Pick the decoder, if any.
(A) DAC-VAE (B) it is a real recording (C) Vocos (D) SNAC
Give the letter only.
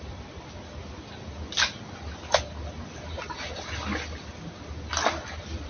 B